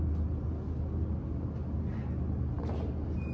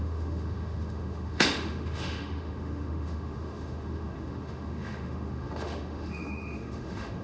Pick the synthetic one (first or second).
second